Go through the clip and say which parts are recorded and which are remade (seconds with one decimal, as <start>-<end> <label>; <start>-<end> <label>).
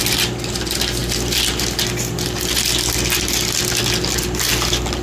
0.0-5.0 recorded